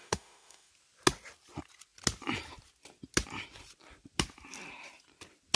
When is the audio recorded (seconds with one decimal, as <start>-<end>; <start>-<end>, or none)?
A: 0.7-5.6